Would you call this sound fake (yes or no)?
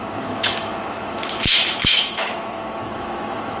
yes